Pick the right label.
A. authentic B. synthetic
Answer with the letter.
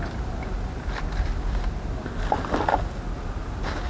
A